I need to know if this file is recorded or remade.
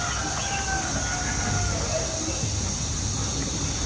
recorded